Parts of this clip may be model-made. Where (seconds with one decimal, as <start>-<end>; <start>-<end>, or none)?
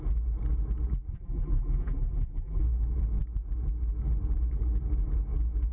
1.1-2.6